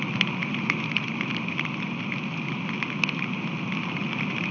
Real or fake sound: real